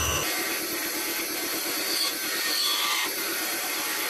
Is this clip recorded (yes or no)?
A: no